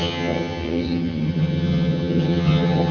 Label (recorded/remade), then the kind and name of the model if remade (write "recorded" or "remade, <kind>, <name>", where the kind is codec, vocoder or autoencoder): remade, vocoder, HiFi-GAN